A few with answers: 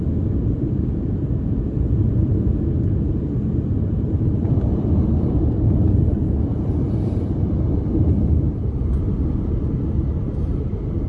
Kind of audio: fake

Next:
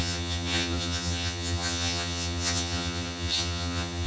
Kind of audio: fake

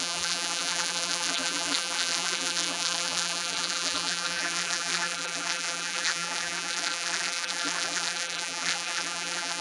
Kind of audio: fake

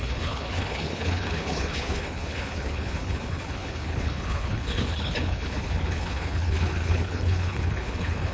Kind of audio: fake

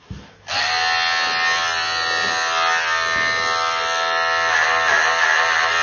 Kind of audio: real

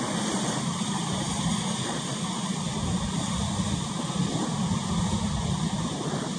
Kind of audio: fake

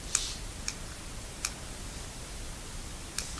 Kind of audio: real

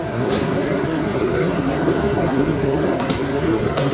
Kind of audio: fake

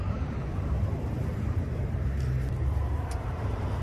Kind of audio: fake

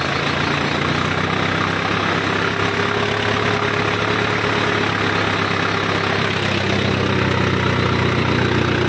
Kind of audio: real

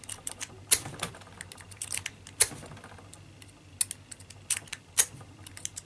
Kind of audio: real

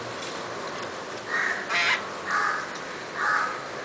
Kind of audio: real